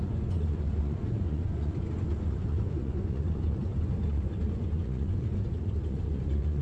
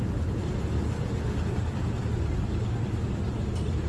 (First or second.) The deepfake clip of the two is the first